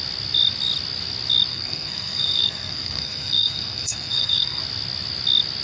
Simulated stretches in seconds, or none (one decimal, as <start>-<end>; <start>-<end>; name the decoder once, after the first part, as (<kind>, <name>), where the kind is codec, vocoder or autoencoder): 1.5-4.6 (codec, SNAC)